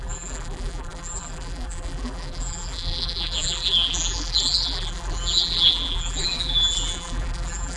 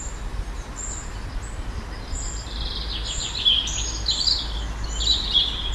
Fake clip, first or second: first